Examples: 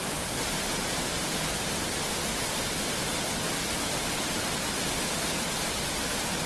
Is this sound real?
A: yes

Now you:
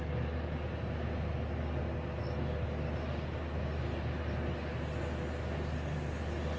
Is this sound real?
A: yes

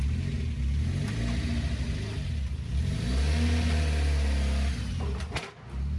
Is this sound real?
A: yes